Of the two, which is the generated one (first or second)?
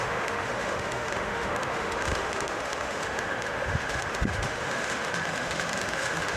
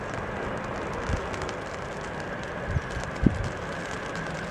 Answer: first